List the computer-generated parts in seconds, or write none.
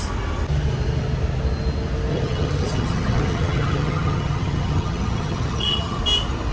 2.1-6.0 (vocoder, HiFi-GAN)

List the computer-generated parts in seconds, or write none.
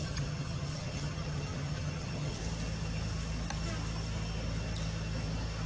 0.0-2.4 (vocoder, HiFi-GAN)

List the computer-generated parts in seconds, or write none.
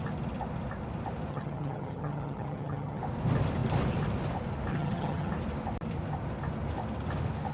1.3-3.0 (vocoder, HiFi-GAN); 4.7-5.3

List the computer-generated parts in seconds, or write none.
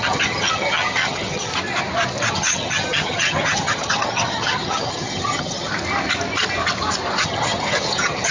0.0-1.5 (vocoder, HiFi-GAN); 2.3-5.7; 7.2-8.3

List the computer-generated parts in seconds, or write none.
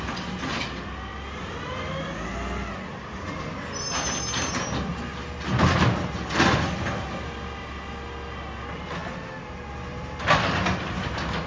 none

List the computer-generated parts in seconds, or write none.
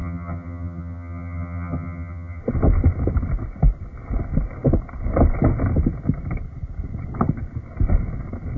0.0-2.4 (vocoder, HiFi-GAN)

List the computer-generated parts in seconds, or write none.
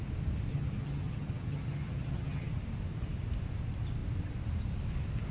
0.5-2.5 (vocoder, HiFi-GAN)